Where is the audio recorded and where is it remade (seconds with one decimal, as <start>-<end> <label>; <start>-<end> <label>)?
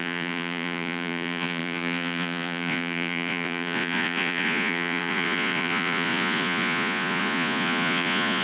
0.0-8.4 remade